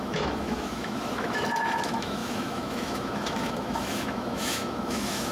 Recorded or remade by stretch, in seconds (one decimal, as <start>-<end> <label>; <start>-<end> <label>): 0.0-5.3 remade